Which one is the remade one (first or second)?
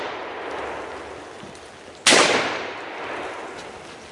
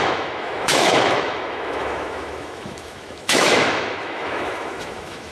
second